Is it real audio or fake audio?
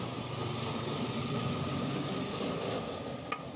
real